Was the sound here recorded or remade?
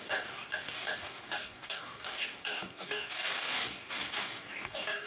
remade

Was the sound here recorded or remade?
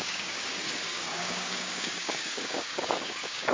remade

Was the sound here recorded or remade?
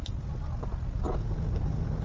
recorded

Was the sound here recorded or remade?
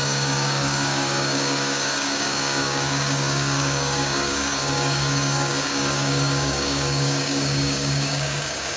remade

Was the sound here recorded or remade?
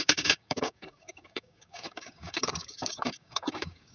remade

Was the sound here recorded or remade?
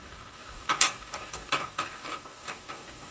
remade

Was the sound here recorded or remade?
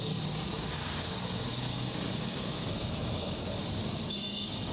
remade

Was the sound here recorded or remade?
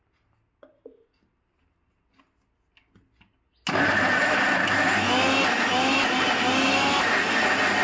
recorded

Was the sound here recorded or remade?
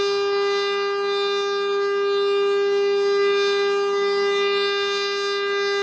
recorded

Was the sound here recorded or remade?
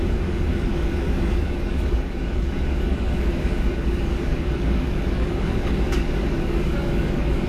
remade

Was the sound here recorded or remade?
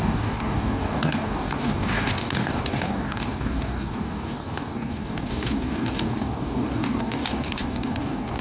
remade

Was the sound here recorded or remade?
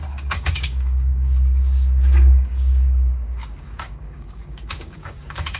remade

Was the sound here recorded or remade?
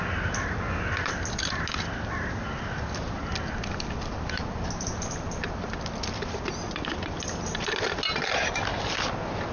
recorded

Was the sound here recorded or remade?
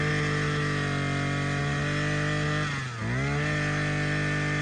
recorded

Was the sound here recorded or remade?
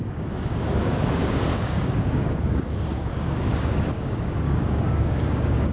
remade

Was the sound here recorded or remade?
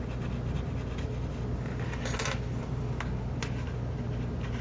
recorded